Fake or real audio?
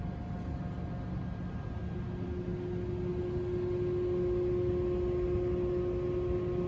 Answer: real